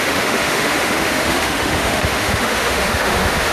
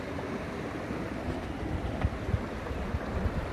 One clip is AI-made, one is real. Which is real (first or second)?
second